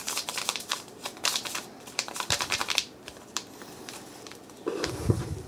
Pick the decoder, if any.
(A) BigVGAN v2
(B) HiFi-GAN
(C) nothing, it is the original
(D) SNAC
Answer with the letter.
A